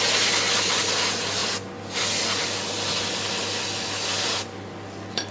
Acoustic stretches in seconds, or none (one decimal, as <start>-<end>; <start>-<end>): 0.0-5.3